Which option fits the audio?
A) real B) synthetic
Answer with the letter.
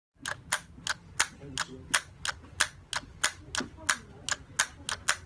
A